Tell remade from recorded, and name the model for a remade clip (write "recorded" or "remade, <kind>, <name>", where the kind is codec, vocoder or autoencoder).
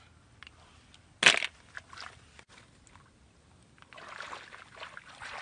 recorded